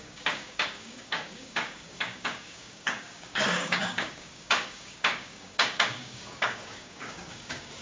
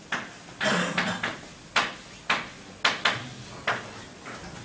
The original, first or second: second